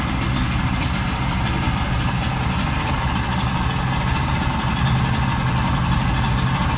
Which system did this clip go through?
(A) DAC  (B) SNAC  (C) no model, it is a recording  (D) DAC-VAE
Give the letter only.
C